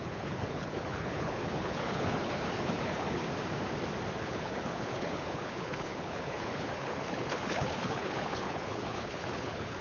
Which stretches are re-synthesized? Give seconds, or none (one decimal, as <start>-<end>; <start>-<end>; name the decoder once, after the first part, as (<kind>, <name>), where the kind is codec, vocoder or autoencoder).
0.0-3.2 (codec, HILCodec); 4.2-9.8